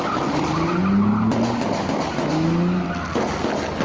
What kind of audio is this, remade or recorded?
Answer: recorded